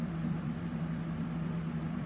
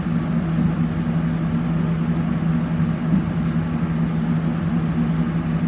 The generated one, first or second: first